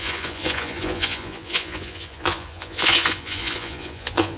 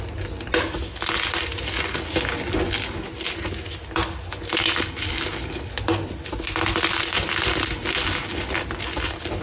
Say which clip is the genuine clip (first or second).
second